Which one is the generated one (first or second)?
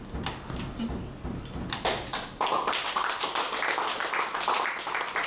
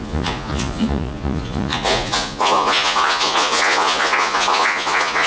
second